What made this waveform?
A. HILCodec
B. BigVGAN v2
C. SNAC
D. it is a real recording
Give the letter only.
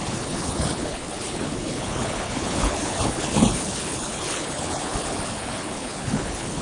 A